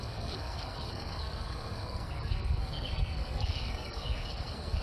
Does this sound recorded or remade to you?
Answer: remade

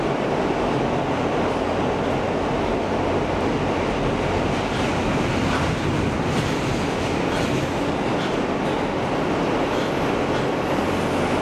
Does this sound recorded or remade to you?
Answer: recorded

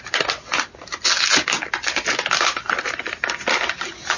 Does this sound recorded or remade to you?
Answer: recorded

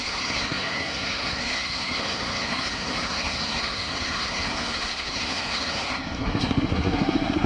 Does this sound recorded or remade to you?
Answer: remade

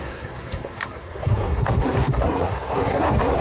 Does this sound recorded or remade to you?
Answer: remade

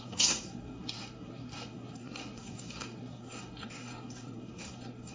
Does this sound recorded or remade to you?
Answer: remade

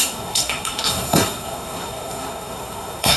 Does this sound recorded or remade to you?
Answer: remade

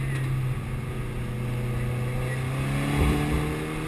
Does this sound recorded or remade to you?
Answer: recorded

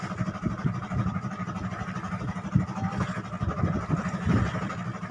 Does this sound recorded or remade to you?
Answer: recorded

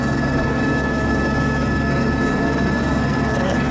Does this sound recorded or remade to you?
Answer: remade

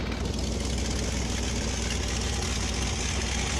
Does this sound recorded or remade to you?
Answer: recorded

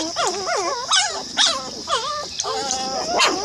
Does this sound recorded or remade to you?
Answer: recorded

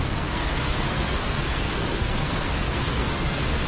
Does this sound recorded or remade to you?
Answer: remade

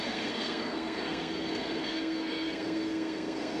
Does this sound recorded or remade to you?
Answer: remade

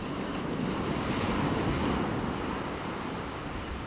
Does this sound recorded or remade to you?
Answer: recorded